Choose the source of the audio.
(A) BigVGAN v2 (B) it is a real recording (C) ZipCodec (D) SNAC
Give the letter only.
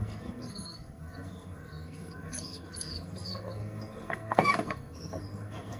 D